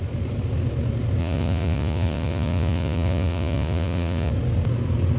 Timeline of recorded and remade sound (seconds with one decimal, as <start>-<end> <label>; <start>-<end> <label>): 0.0-1.2 recorded; 1.2-4.3 remade; 4.3-5.2 recorded

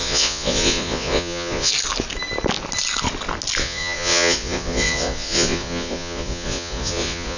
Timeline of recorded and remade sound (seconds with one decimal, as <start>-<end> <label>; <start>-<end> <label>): 0.0-1.7 remade; 1.7-3.6 recorded; 3.6-7.4 remade

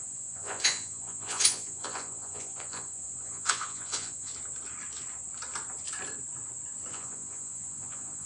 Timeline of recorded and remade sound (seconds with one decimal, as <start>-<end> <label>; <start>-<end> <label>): 0.0-4.3 remade; 4.3-6.9 recorded; 6.9-8.3 remade

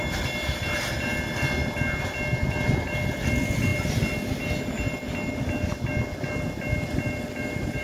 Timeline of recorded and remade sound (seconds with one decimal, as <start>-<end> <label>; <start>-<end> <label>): 0.0-7.8 recorded